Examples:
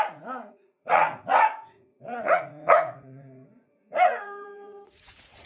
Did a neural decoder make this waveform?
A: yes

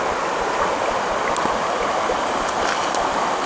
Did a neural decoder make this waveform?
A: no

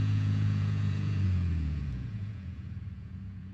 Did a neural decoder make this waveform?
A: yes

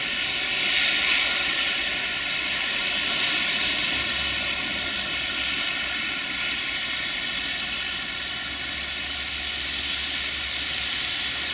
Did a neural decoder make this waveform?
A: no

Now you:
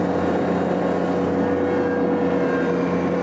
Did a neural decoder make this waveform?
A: no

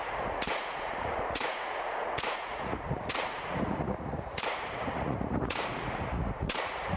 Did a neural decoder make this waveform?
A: yes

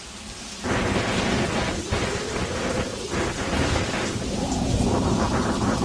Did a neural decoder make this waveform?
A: no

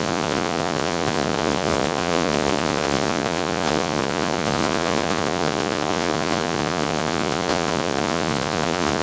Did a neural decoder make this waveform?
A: yes